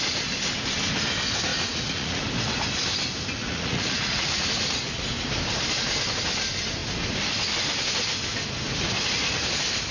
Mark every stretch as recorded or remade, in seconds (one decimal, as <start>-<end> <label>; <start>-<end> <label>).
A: 0.0-1.5 recorded; 1.5-2.2 remade; 2.2-3.4 recorded; 3.4-5.0 remade; 5.0-9.9 recorded